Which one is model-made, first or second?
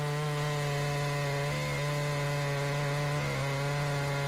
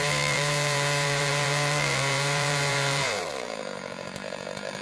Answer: second